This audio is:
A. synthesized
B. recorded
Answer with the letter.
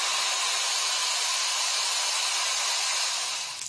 B